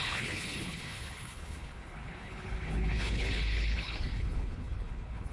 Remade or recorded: remade